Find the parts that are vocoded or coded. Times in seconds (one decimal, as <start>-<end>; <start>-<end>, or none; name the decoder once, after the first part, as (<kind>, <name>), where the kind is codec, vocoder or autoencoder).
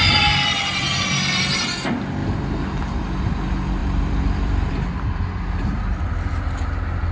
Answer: 2.2-2.8 (vocoder, BigVGAN v2); 3.8-5.8